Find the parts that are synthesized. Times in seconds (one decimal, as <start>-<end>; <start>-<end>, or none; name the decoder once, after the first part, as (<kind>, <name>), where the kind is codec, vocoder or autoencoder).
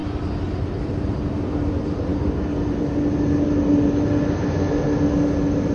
none